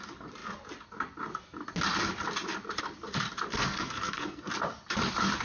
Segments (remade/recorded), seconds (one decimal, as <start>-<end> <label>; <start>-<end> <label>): 0.0-3.5 recorded; 3.5-4.5 remade; 4.5-5.4 recorded